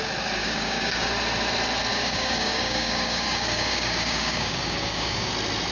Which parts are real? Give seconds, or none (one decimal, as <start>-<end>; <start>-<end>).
0.0-0.4; 1.1-1.9; 5.3-5.7